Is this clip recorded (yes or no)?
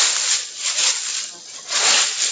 yes